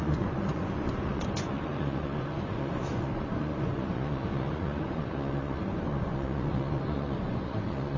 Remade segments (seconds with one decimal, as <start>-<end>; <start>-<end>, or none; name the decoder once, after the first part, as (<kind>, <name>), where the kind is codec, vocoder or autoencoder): 0.0-8.0 (vocoder, Vocos)